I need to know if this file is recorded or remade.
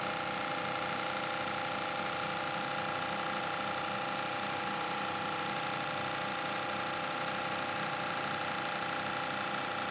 recorded